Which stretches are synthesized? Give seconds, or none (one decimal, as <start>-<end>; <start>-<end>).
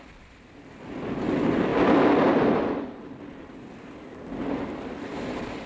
none